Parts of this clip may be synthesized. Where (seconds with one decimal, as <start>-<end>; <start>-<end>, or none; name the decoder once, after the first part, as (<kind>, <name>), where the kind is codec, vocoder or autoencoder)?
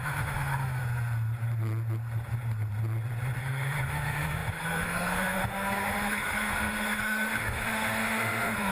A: 0.0-0.8 (autoencoder, DAC-VAE); 3.4-8.7